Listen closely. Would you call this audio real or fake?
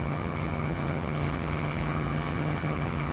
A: fake